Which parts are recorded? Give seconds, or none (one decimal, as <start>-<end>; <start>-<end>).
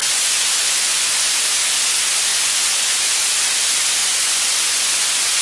1.4-2.3; 3.1-4.0